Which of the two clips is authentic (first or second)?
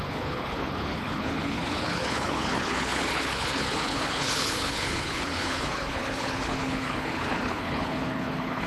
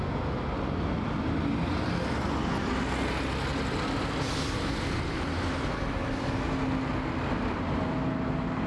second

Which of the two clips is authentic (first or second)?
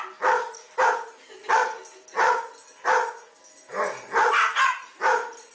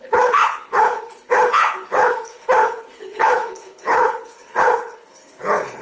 first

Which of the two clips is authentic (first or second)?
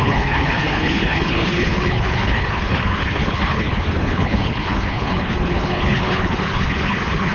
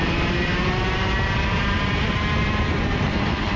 second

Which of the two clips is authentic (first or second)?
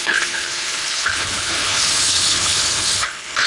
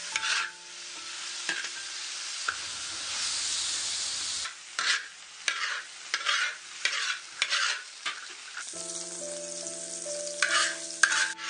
second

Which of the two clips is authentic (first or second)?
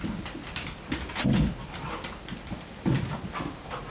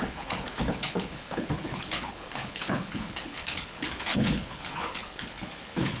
first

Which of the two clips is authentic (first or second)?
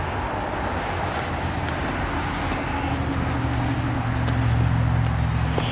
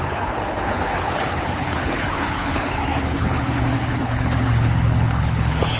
first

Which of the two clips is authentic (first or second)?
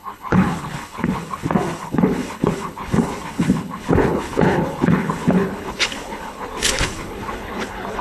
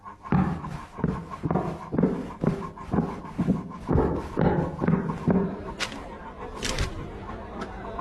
second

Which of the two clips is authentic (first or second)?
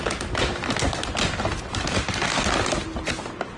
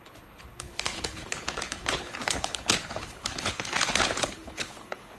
first